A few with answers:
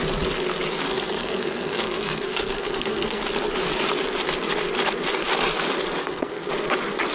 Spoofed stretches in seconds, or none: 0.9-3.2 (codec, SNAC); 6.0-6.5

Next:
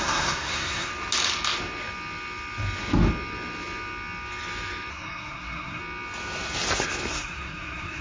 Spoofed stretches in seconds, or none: 0.0-0.9 (codec, SNAC); 4.9-5.8; 7.1-8.0